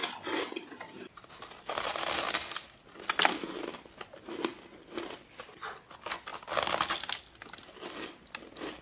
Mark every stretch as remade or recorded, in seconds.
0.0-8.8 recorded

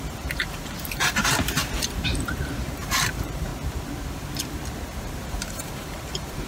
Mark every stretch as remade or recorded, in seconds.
0.0-3.5 remade; 3.5-5.0 recorded; 5.0-6.5 remade

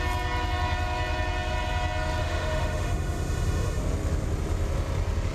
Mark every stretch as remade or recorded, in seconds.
0.0-2.2 recorded; 2.2-3.8 remade; 3.8-5.3 recorded

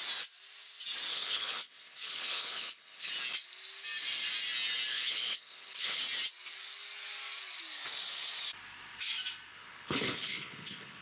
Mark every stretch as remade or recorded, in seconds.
0.0-1.1 recorded; 1.1-3.1 remade; 3.1-4.9 recorded; 4.9-6.0 remade; 6.0-9.5 recorded; 9.5-11.0 remade